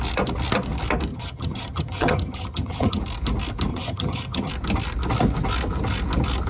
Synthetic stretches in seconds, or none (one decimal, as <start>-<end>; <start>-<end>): 1.1-3.0; 3.7-4.5